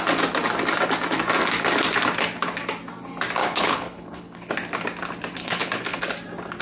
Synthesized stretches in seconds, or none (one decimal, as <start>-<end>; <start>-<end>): 3.4-4.5; 5.4-6.0

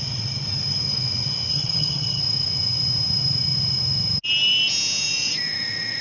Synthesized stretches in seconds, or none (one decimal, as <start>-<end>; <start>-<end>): 1.5-2.2